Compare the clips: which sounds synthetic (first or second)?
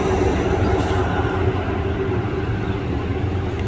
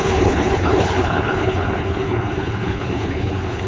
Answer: second